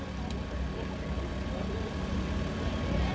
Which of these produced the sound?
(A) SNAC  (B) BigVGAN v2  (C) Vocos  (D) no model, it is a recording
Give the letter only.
D